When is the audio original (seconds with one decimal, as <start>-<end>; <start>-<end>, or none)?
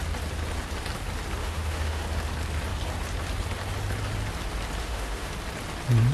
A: 0.0-1.4; 2.0-4.8; 5.3-6.1